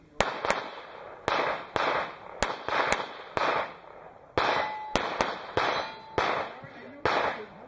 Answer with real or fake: real